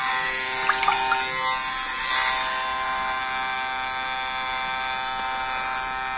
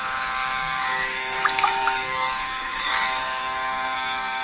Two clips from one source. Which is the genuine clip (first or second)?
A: first